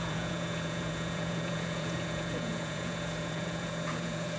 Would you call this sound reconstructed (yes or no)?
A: yes